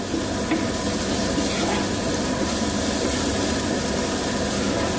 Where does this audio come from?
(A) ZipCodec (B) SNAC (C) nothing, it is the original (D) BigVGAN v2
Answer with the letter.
C